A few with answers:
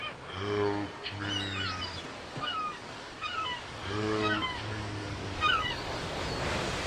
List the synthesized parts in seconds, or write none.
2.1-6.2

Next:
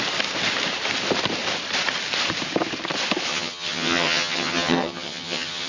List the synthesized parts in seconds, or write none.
3.3-5.7